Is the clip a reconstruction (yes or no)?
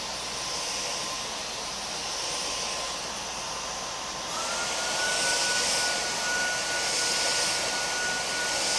no